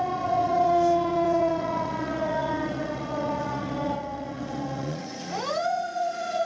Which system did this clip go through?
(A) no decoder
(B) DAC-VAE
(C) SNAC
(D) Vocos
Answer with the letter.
D